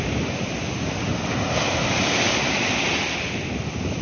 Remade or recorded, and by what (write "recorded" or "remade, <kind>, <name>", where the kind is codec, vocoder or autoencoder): recorded